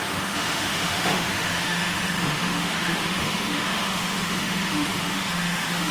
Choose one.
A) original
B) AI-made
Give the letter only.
B